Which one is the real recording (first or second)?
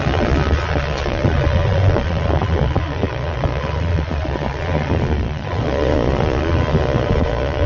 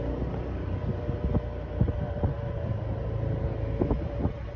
second